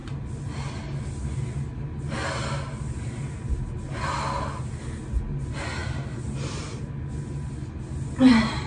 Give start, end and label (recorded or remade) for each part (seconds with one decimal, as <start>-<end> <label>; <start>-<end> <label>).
0.0-8.7 recorded